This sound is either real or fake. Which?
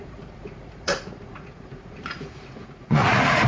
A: fake